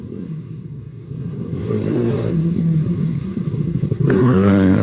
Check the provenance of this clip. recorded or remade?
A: remade